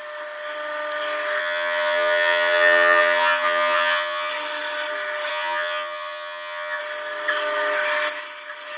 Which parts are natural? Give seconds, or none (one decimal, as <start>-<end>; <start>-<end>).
0.0-1.4; 4.3-5.3; 6.8-8.8